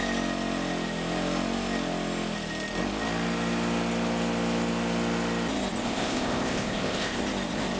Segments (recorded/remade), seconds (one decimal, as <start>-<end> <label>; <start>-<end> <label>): 0.0-5.8 recorded; 5.8-7.2 remade; 7.2-7.8 recorded